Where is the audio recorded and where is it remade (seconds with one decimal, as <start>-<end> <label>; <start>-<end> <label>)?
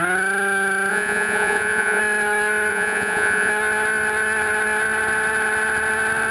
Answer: 0.0-0.9 recorded; 0.9-2.0 remade; 2.0-2.7 recorded; 2.7-3.5 remade; 3.5-6.3 recorded